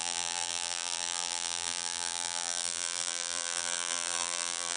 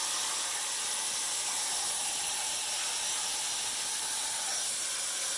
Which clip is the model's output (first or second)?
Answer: first